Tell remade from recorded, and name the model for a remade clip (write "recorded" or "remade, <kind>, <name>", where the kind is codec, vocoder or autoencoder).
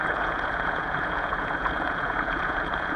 remade, vocoder, Vocos